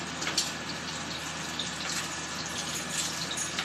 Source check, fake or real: real